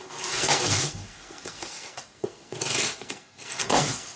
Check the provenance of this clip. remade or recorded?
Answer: remade